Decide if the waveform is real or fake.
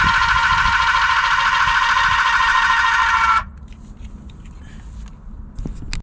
real